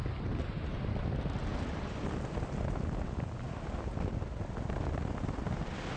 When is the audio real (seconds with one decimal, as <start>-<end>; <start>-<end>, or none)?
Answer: 0.0-6.0